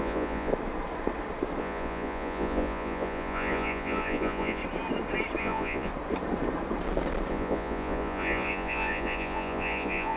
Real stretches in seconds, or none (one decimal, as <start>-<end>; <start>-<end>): 0.5-1.6; 4.6-5.4; 5.9-7.3